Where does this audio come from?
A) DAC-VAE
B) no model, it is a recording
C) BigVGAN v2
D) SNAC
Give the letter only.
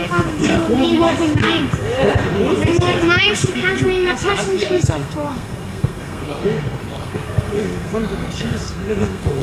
D